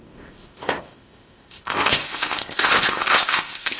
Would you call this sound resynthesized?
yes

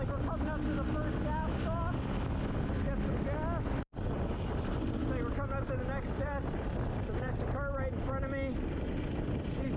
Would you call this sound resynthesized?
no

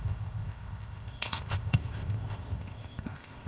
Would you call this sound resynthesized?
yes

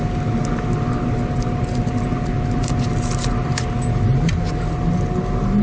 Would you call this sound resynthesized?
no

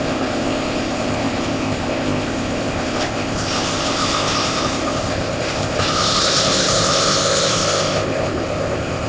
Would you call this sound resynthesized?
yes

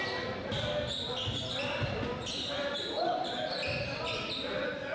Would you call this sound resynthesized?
no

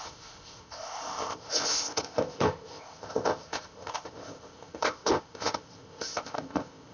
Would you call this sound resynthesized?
yes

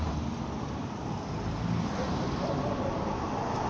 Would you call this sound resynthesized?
no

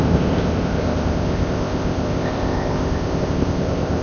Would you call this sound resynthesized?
yes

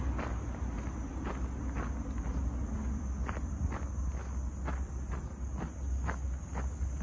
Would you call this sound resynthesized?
no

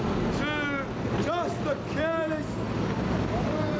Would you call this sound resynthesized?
no